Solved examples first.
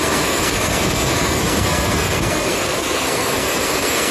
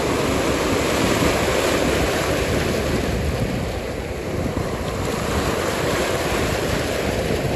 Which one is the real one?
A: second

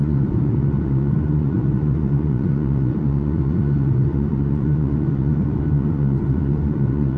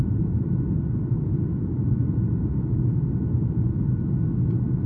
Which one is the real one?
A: second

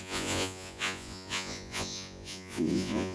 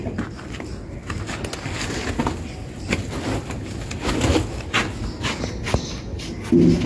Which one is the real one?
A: second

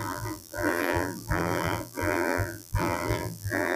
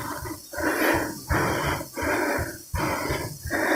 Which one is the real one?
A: second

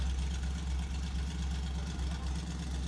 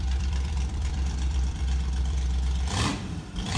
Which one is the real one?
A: first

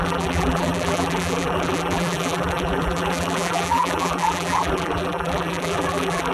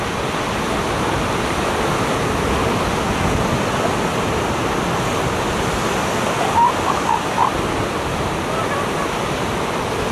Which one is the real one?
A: second